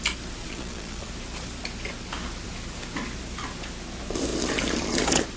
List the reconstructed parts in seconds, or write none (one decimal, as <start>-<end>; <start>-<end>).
0.4-1.1